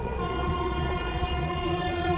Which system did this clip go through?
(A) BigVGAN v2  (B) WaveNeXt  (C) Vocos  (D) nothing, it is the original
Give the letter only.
C